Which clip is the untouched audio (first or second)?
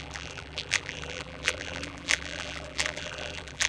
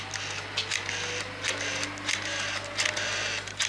second